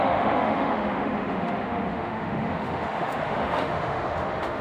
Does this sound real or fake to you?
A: fake